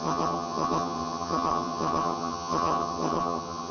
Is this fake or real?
fake